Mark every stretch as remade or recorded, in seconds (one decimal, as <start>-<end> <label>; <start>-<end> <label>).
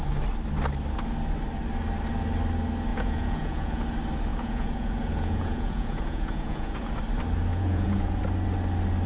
0.0-2.9 recorded; 2.9-3.8 remade; 3.8-4.3 recorded; 4.3-6.9 remade; 6.9-7.5 recorded; 7.5-8.2 remade; 8.2-9.1 recorded